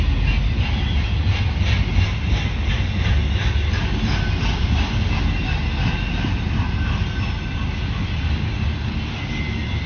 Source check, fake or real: real